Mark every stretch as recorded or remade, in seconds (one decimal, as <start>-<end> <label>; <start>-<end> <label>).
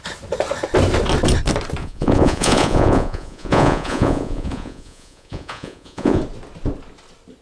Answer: 0.0-1.8 recorded; 1.8-6.2 remade; 6.2-7.4 recorded